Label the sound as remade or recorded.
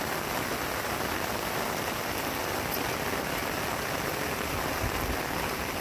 recorded